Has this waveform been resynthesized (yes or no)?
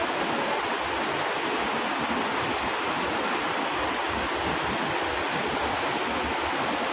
no